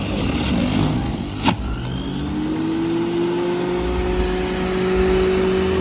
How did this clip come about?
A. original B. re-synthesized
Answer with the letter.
A